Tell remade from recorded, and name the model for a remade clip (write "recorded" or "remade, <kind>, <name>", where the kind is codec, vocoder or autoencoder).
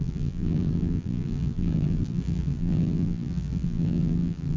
remade, vocoder, BigVGAN v2